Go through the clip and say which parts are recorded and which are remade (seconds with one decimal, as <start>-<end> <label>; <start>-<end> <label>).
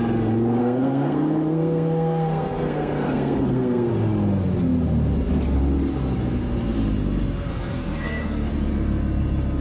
0.0-0.6 recorded; 0.6-3.9 remade; 3.9-7.5 recorded; 7.5-8.5 remade; 8.5-9.6 recorded